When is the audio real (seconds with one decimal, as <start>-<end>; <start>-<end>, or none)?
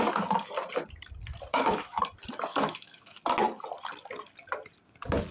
0.0-1.5; 2.0-2.5; 3.2-5.3